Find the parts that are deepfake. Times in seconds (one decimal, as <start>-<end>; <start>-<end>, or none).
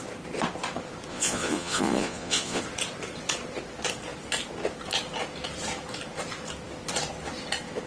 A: 1.1-2.6